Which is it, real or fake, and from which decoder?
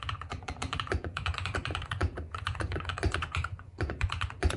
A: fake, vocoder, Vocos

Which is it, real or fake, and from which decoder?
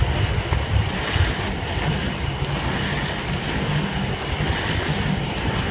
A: real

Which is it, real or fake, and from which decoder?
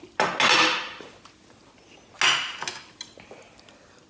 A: real